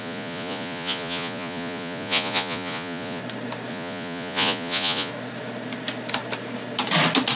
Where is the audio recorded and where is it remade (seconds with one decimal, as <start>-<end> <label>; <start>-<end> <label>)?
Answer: 0.0-3.2 remade; 3.2-3.7 recorded; 3.7-5.1 remade; 5.1-7.4 recorded